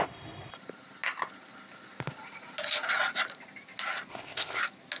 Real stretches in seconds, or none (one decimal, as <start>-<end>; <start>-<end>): 0.0-4.1; 4.6-5.0